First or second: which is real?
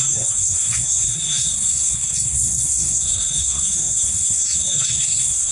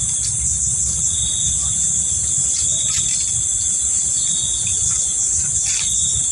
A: second